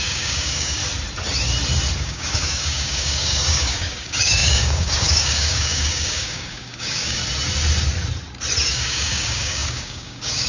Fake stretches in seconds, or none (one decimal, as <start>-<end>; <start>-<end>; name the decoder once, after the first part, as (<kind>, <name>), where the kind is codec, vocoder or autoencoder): 0.0-0.8 (codec, DAC); 2.0-7.2; 8.7-10.5